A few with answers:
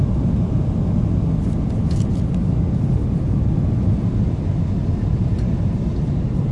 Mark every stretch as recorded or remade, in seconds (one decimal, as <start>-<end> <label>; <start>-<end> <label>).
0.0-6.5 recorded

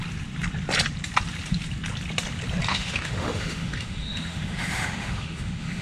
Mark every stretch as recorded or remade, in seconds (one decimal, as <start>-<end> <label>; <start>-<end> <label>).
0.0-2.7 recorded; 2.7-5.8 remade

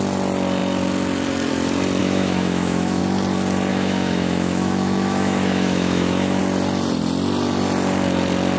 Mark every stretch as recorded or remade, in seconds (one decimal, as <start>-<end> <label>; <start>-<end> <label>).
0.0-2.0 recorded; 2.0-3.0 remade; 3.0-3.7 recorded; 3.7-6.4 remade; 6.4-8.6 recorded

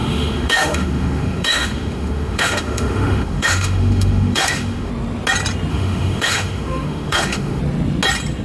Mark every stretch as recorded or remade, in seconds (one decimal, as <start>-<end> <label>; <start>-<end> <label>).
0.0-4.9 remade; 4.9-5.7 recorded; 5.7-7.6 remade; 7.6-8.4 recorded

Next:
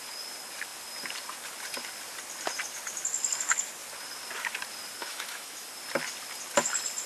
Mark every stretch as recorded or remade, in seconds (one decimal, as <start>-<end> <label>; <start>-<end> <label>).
0.0-5.0 recorded; 5.0-5.7 remade; 5.7-7.1 recorded

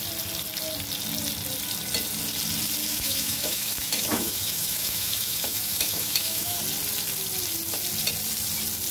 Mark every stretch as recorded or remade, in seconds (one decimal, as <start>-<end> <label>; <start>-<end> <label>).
0.0-2.8 recorded; 2.8-6.6 remade; 6.6-8.9 recorded

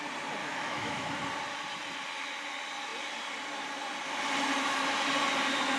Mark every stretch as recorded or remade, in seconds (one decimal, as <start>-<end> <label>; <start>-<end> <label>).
0.0-0.4 recorded; 0.4-1.1 remade; 1.1-5.8 recorded